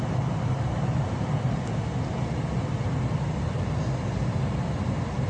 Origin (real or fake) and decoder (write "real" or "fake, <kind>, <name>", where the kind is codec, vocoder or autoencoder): real